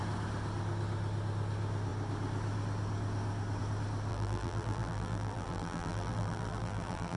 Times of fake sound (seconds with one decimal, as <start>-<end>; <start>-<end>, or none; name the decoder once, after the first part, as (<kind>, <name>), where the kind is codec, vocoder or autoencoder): 4.1-7.2 (vocoder, BigVGAN v2)